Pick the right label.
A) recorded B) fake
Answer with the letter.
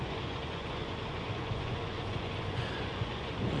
B